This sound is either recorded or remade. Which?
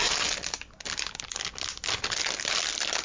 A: recorded